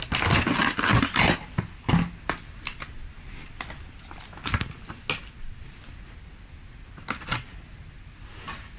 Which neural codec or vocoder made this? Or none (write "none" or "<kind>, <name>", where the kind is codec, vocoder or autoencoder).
none